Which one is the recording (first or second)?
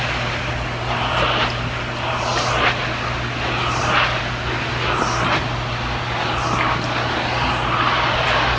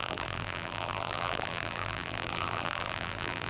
first